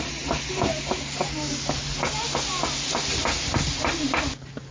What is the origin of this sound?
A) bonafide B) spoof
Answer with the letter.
A